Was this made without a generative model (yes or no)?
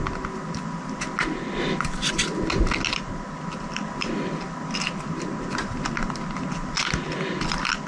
yes